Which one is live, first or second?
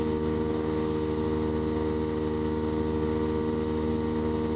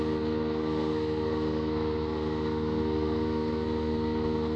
first